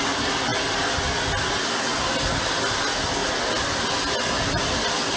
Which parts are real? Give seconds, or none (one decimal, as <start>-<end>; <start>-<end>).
0.0-5.2